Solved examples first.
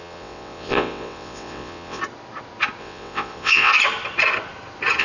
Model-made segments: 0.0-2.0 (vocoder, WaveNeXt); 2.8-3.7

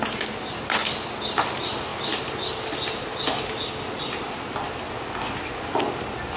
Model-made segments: none

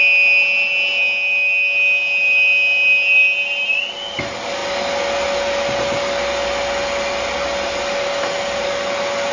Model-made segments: none

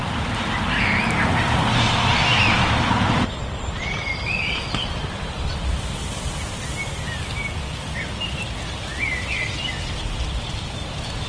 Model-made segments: none

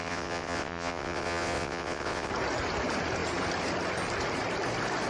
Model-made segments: 0.0-2.3 (vocoder, WaveNeXt)